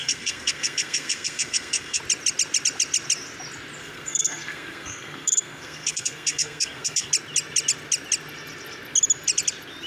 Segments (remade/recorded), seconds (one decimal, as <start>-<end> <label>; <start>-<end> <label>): 0.0-2.0 remade; 2.0-3.8 recorded; 3.8-7.1 remade; 7.1-9.9 recorded